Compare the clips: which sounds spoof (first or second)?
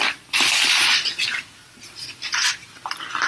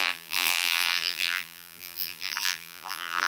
second